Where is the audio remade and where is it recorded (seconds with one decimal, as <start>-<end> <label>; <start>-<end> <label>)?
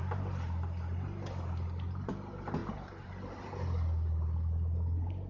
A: 0.0-2.6 recorded; 2.6-3.1 remade; 3.1-5.3 recorded